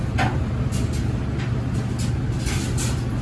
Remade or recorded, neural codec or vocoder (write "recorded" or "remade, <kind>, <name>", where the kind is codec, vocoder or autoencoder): recorded